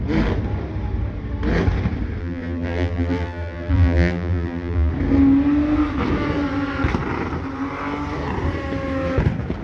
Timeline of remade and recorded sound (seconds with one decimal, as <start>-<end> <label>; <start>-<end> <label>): 0.0-2.2 recorded; 2.2-4.9 remade; 4.9-9.6 recorded